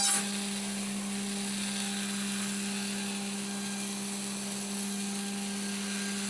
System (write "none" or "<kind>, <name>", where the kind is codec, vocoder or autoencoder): none